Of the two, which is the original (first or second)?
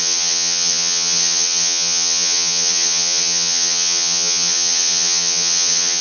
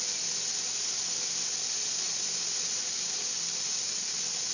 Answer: second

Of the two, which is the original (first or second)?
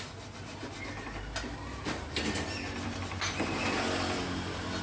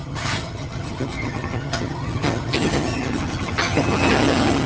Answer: first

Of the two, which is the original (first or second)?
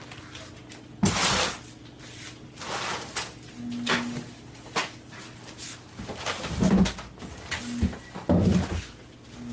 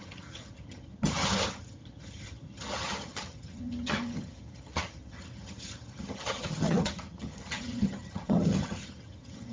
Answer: first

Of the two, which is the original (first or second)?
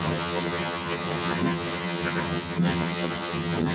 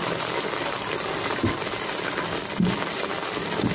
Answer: second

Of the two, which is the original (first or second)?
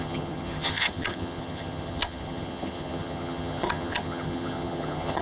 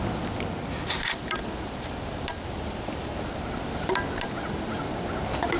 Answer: second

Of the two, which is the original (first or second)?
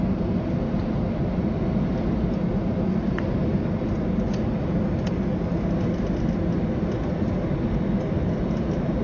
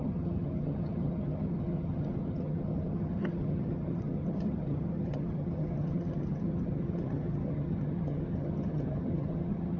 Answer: first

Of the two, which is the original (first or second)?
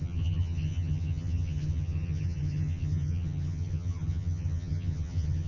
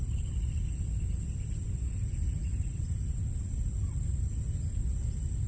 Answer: second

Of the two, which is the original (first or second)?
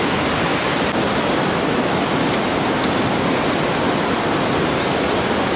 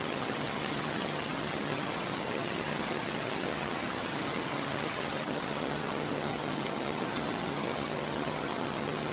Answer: first